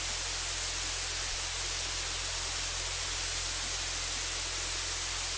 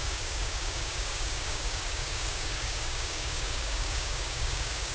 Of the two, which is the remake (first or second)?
second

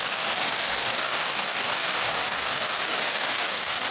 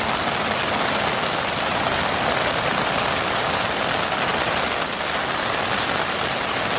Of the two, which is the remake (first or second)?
first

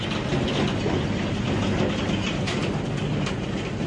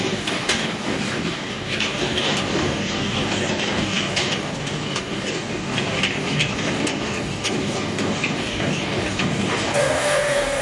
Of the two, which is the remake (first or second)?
second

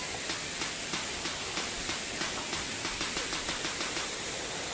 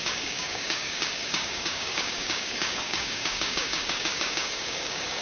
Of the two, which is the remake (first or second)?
second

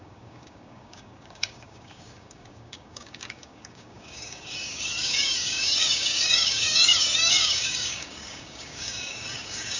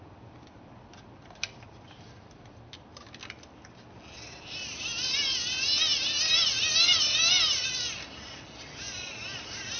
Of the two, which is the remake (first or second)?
first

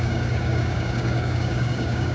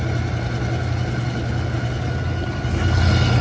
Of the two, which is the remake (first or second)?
first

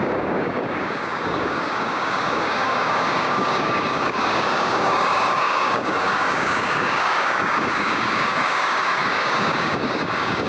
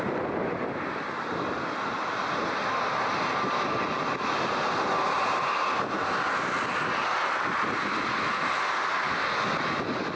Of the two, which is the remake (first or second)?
first